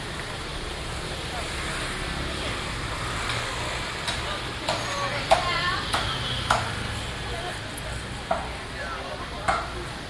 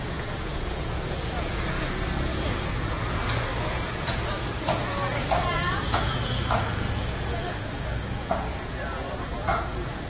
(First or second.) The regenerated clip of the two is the second